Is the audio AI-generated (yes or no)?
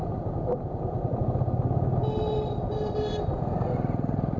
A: no